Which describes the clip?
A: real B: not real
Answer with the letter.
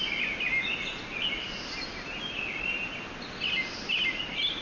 A